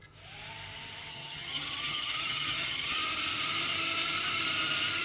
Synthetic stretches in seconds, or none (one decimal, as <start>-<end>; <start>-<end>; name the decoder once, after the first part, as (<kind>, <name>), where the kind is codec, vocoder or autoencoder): 1.1-3.0 (vocoder, HiFi-GAN)